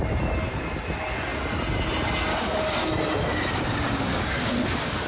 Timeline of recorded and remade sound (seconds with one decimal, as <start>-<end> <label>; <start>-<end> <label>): 0.0-2.3 recorded; 2.3-2.9 remade; 2.9-3.3 recorded; 3.3-4.5 remade; 4.5-5.1 recorded